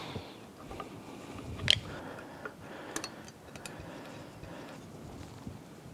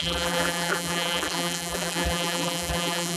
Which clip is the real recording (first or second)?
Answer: first